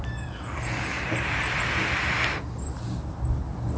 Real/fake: real